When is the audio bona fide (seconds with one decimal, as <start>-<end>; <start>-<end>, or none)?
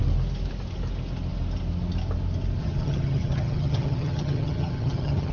0.0-2.6